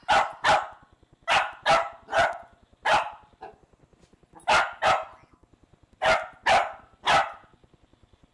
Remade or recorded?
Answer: recorded